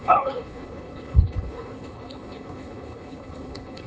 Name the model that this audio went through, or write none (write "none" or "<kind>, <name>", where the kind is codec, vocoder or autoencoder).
codec, HILCodec